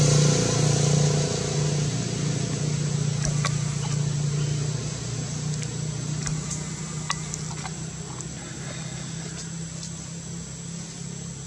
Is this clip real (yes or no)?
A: yes